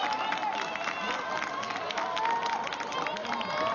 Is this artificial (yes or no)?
no